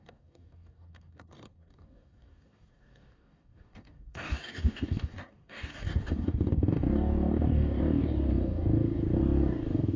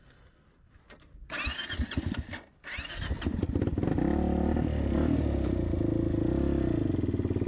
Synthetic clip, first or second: first